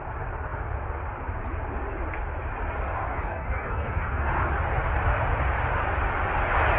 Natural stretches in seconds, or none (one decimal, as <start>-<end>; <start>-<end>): 0.0-3.1; 4.3-6.8